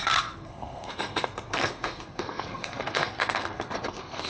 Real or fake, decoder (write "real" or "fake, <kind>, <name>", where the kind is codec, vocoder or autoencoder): fake, codec, SNAC